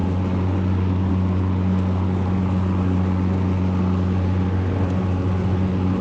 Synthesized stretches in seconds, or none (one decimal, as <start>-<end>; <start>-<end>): none

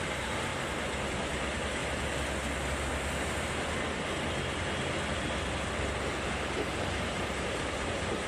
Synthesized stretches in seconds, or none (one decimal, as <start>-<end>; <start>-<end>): 0.0-0.5; 1.1-1.8; 6.8-8.3